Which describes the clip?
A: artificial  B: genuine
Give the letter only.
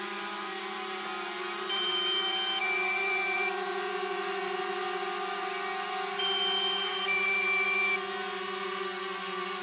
A